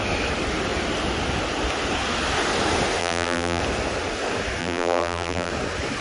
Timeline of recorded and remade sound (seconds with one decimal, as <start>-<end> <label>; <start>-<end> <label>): 0.0-3.0 recorded; 3.0-3.6 remade; 3.6-4.6 recorded; 4.6-5.5 remade; 5.5-6.0 recorded